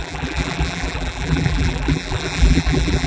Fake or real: fake